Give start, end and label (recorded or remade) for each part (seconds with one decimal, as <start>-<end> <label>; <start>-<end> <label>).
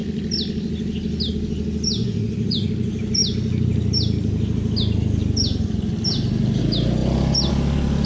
0.0-2.0 recorded; 2.0-2.7 remade; 2.7-8.1 recorded